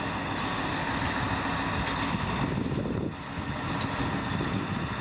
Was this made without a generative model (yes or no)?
yes